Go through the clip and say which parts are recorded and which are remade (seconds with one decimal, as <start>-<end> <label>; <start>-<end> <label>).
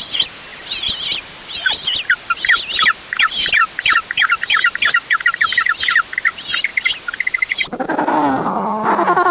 0.0-0.5 recorded; 0.5-4.9 remade; 4.9-6.7 recorded; 6.7-7.8 remade; 7.8-9.3 recorded